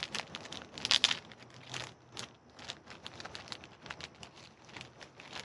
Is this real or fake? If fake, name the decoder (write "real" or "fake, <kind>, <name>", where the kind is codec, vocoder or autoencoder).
real